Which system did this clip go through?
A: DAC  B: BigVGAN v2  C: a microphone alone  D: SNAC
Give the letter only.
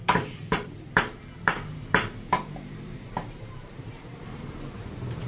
B